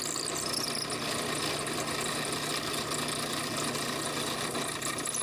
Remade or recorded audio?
recorded